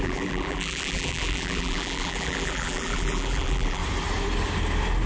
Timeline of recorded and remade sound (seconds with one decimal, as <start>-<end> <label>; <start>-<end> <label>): 0.0-3.8 remade; 3.8-5.1 recorded